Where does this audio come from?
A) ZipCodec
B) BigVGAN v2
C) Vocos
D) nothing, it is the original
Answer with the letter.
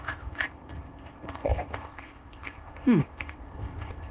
A